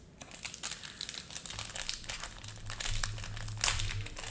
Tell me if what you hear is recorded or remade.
recorded